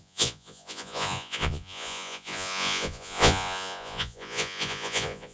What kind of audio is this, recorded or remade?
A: remade